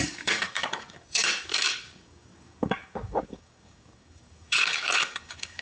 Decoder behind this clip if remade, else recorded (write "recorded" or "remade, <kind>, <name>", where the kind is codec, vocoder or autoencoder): remade, codec, DAC